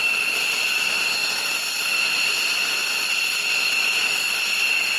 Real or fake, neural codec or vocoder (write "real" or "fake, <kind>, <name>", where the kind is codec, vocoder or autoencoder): real